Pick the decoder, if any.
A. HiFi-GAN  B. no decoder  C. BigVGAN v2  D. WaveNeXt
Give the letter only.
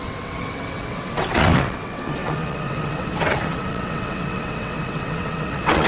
D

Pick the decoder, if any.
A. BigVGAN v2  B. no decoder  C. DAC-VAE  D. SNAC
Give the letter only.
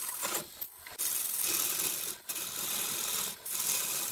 B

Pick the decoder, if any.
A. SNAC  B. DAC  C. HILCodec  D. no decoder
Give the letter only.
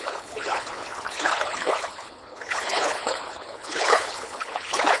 C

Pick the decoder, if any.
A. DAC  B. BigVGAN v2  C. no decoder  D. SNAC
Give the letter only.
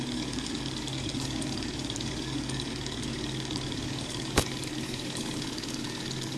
A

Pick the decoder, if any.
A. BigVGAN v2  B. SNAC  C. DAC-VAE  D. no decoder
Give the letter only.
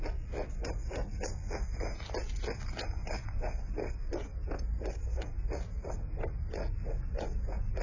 D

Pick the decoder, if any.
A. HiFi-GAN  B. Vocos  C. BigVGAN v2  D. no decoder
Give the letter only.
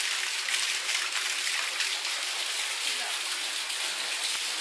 D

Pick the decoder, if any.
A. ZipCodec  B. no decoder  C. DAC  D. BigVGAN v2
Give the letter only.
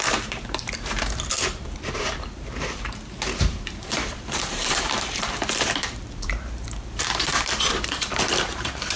D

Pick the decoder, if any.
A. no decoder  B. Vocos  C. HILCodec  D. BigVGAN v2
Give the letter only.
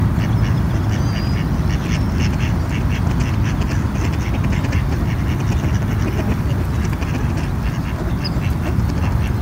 A